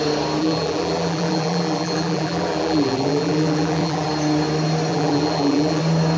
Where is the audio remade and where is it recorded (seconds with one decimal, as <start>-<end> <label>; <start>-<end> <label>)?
0.0-0.4 recorded; 0.4-4.1 remade; 4.1-4.9 recorded; 4.9-5.8 remade; 5.8-6.2 recorded